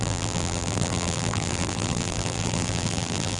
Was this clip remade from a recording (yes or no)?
yes